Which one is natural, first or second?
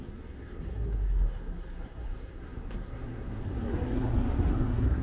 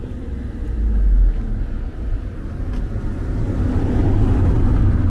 second